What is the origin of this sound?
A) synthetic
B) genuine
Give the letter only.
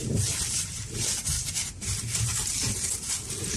B